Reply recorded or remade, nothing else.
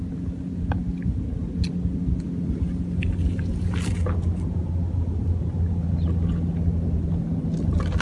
recorded